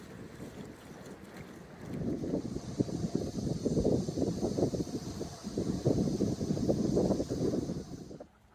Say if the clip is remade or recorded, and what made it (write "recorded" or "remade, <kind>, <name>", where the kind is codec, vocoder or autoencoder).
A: recorded